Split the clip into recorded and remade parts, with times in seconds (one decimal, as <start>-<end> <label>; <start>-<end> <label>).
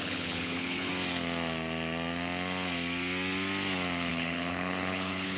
0.0-0.9 remade; 0.9-4.1 recorded; 4.1-5.4 remade